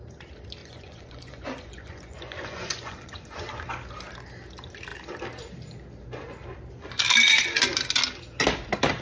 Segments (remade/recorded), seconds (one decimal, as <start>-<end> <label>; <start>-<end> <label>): 0.0-0.6 recorded; 0.6-3.4 remade; 3.4-9.0 recorded